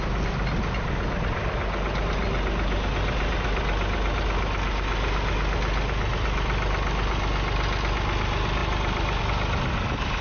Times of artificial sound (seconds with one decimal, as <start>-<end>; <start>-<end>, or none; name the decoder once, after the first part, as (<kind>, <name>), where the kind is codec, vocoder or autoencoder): none